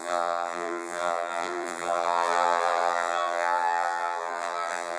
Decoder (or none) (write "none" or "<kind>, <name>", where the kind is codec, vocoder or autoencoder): vocoder, BigVGAN v2